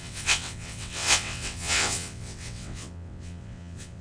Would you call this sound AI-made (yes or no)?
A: yes